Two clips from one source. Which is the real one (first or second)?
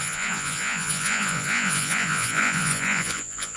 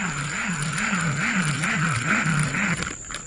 second